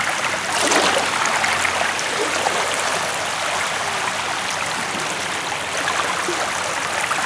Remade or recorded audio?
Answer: recorded